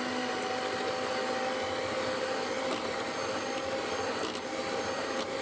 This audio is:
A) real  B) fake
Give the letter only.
A